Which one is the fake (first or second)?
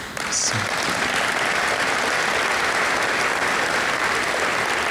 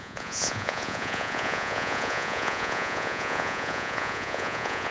second